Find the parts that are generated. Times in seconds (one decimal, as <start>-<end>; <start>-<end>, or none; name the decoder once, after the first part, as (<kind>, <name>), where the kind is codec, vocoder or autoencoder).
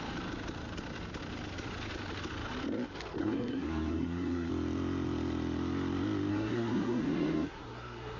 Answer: 3.2-4.5 (codec, SNAC); 6.3-8.2